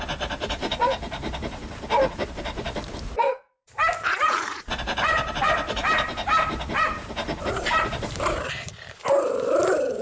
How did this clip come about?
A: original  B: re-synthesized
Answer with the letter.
B